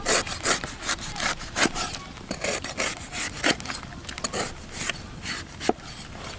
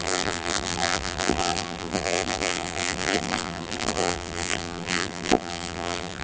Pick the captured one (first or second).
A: first